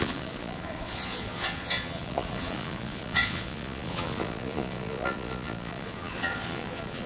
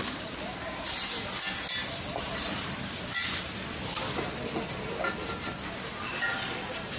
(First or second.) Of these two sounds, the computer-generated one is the first